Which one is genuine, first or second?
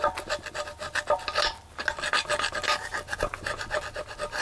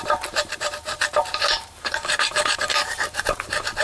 first